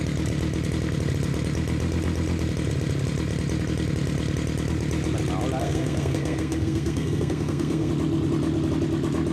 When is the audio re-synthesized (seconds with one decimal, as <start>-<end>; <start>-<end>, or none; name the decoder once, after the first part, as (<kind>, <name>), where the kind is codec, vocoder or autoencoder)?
5.6-7.9 (codec, SNAC)